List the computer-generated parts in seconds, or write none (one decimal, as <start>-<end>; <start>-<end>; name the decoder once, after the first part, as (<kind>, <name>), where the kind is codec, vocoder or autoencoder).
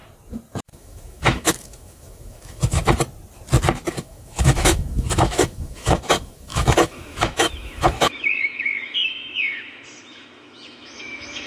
0.6-2.8 (autoencoder, DAC-VAE); 3.9-11.5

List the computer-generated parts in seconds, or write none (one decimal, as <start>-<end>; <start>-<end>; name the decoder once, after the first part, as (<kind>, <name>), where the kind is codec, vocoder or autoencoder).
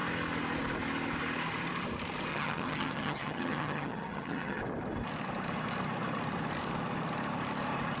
2.3-4.6 (vocoder, HiFi-GAN)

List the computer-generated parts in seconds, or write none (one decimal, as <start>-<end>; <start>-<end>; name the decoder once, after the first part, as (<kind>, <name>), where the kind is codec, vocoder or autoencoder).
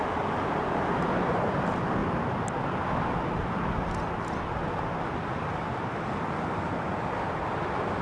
0.0-2.0 (vocoder, BigVGAN v2); 6.5-8.0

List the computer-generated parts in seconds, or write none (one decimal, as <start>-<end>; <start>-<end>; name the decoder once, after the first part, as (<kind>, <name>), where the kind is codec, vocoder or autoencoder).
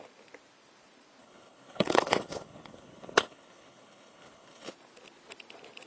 1.2-4.7 (codec, HILCodec)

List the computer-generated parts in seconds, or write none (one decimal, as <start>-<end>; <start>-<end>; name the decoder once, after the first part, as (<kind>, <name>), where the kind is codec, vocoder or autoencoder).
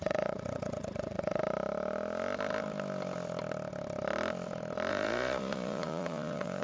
0.0-1.4 (vocoder, Vocos); 4.9-6.6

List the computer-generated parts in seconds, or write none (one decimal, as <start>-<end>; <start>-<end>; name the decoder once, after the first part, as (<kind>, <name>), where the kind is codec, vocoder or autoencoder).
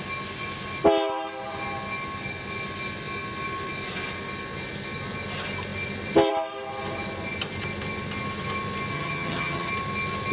8.9-9.7 (vocoder, HiFi-GAN)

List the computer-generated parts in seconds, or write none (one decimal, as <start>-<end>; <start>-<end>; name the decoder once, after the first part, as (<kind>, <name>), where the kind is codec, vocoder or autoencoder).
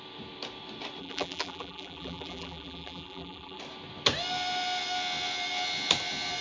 1.0-3.6 (vocoder, BigVGAN v2)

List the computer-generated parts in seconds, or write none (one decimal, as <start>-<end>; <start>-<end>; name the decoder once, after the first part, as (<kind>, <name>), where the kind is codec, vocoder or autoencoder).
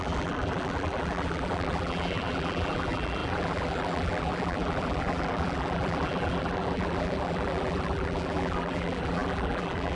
0.0-10.0 (vocoder, BigVGAN v2)